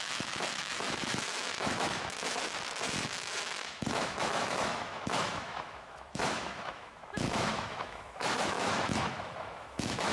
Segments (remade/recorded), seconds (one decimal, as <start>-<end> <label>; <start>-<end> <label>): 0.0-10.1 remade

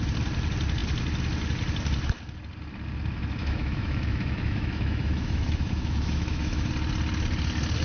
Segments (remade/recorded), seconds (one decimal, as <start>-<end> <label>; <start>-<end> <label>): 0.0-3.4 recorded; 3.4-6.7 remade; 6.7-7.8 recorded

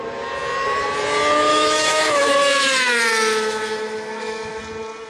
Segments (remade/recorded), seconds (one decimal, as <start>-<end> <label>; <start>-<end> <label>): 0.0-1.5 recorded; 1.5-4.6 remade; 4.6-5.1 recorded

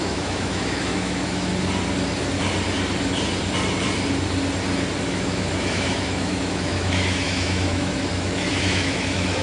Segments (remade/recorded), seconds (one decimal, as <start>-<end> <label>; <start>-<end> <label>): 0.0-1.5 remade; 1.5-5.0 recorded; 5.0-9.4 remade